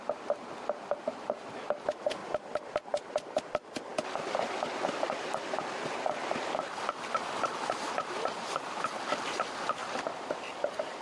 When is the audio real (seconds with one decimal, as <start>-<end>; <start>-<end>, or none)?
0.0-2.2; 3.4-9.8; 10.4-11.0